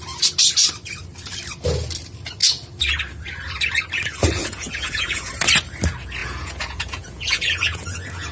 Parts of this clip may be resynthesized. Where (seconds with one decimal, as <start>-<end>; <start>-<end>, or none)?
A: 4.4-5.3; 6.2-8.3